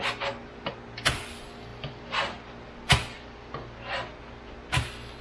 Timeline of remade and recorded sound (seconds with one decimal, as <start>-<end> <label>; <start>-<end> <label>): 0.0-5.2 recorded